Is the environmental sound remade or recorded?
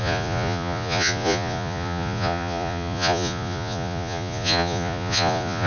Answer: remade